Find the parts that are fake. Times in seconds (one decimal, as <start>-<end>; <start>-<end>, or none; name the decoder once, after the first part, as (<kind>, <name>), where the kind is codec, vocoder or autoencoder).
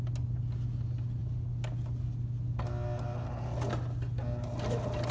none